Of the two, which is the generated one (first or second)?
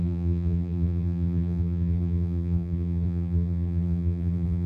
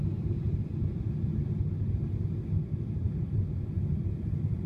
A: first